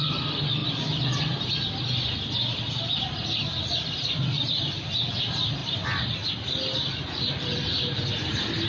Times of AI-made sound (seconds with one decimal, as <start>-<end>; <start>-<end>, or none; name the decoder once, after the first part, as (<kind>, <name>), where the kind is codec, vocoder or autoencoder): 0.0-0.6 (vocoder, BigVGAN v2); 4.3-5.6; 6.9-8.7